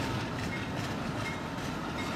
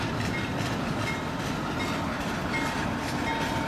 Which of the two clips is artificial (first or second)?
first